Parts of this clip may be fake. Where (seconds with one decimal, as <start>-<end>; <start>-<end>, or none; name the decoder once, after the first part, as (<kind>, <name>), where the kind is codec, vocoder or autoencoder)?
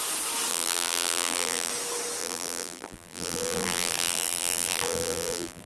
0.5-1.7 (vocoder, BigVGAN v2); 2.2-5.7